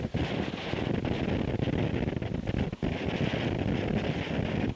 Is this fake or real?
real